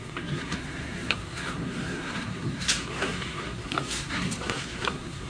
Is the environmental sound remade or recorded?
remade